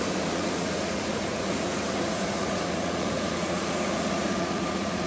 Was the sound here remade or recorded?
remade